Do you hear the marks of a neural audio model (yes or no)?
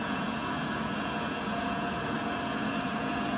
yes